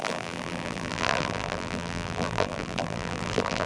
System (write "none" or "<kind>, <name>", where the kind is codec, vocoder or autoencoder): vocoder, BigVGAN v2